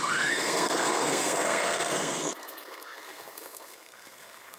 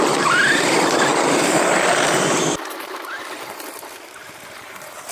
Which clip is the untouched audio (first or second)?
second